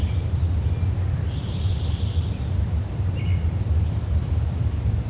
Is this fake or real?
real